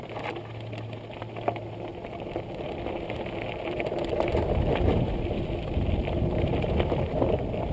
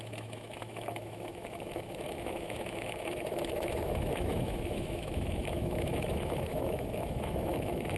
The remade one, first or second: second